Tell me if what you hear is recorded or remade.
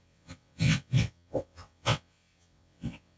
remade